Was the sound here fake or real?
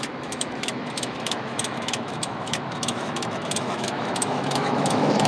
fake